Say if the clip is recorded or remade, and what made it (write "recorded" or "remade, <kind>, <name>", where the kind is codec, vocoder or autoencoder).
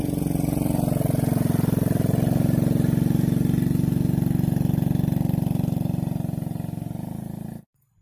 recorded